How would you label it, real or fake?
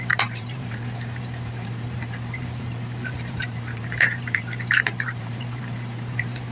fake